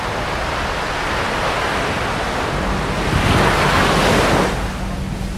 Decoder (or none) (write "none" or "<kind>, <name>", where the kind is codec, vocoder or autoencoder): none